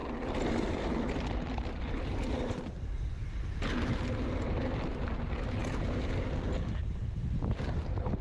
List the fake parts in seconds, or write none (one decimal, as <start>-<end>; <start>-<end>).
none